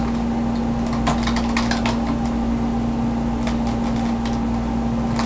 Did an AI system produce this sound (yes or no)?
no